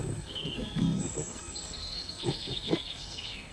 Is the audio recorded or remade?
remade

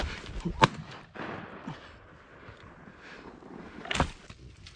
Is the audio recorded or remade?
recorded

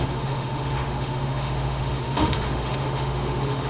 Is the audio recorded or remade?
remade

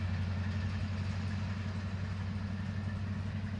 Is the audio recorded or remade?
recorded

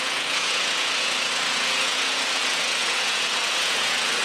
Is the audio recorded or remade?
remade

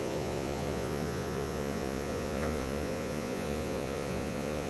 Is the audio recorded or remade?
remade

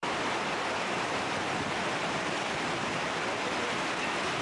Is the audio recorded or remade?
remade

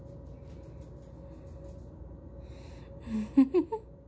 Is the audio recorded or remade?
recorded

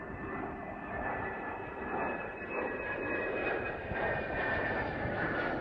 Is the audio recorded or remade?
remade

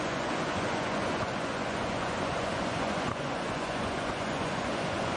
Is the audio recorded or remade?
remade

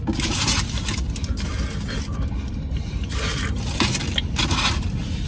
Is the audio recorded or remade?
recorded